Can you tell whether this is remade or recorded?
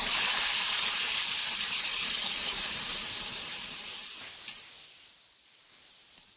remade